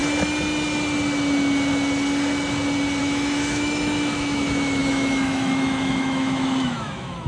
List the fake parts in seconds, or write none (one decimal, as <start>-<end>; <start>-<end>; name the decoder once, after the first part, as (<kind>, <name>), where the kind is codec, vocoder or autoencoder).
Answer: 3.0-7.3 (autoencoder, DAC-VAE)